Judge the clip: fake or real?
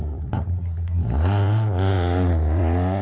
fake